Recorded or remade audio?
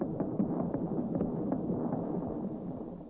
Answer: recorded